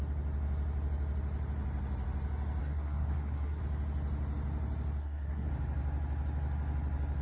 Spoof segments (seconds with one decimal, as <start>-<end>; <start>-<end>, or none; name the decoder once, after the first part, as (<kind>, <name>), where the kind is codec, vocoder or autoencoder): 2.6-3.6 (codec, SNAC); 5.0-5.5